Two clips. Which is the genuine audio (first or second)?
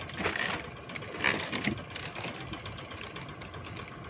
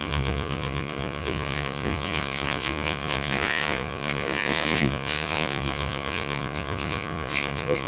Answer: first